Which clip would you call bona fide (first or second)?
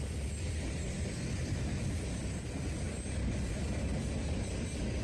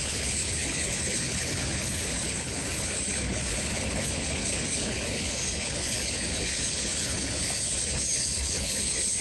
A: first